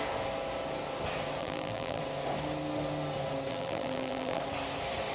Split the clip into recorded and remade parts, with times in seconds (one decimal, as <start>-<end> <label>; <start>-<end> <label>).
0.0-1.4 recorded; 1.4-2.0 remade; 2.0-3.5 recorded; 3.5-4.4 remade; 4.4-5.1 recorded